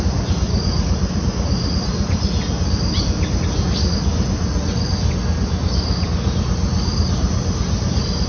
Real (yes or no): yes